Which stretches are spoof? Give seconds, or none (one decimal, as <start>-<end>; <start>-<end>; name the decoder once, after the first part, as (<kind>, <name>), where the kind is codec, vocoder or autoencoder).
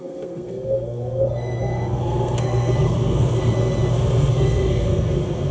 0.0-5.5 (codec, SNAC)